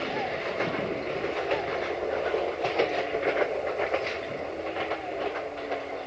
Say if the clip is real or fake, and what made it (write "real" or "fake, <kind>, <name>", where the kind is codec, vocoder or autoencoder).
real